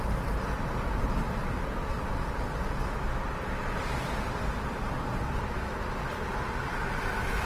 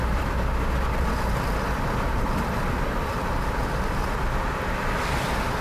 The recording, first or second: first